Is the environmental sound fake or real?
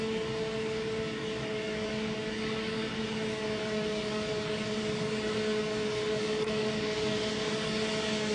fake